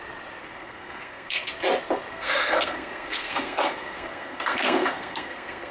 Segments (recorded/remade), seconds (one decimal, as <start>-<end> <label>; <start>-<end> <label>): 0.0-0.4 recorded; 0.4-1.5 remade; 1.5-2.1 recorded; 2.1-5.7 remade